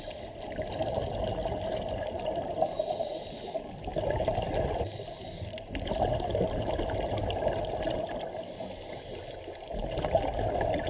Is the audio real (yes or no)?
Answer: yes